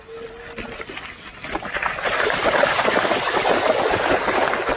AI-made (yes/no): no